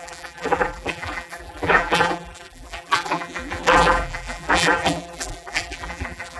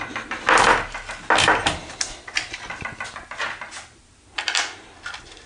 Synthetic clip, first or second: first